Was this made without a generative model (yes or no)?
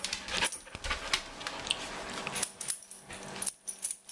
yes